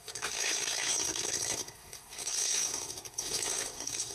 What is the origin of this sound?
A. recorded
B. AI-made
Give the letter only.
B